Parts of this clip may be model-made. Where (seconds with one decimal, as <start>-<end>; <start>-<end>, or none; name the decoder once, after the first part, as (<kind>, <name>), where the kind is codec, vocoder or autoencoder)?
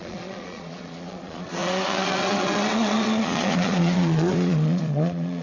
0.0-5.4 (vocoder, Vocos)